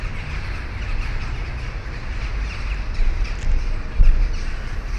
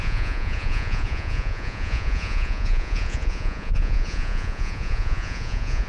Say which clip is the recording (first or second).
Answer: first